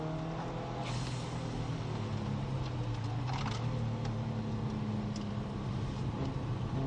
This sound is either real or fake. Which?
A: real